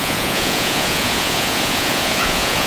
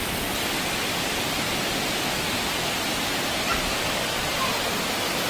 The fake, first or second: first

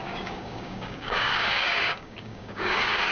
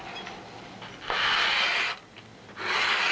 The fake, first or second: first